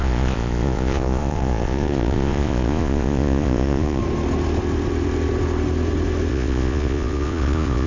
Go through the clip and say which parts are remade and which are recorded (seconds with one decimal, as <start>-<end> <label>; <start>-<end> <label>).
0.0-4.0 remade; 4.0-6.3 recorded; 6.3-7.9 remade